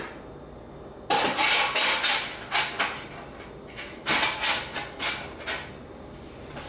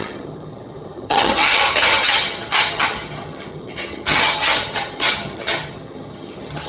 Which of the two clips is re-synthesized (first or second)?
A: second